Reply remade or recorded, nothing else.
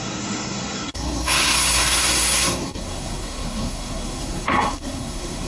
remade